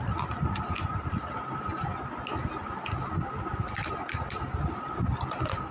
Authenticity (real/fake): real